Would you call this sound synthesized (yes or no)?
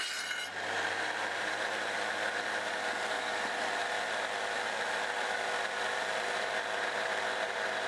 no